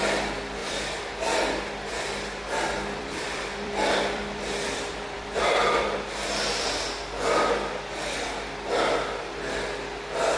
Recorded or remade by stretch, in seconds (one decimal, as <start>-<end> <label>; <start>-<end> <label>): 0.0-0.6 recorded; 0.6-5.8 remade; 5.8-10.4 recorded